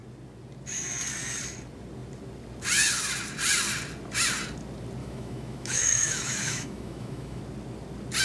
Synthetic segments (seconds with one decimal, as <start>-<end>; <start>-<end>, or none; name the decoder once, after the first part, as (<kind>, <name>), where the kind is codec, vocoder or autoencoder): 5.0-7.4 (autoencoder, DAC-VAE)